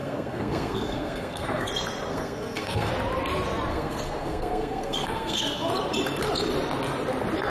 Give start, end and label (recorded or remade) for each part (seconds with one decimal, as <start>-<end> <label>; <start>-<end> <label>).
0.0-1.7 remade; 1.7-2.1 recorded; 2.1-2.9 remade; 2.9-3.7 recorded; 3.7-5.7 remade; 5.7-7.5 recorded